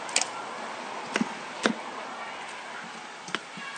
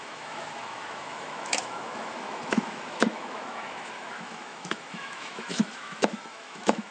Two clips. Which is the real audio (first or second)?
first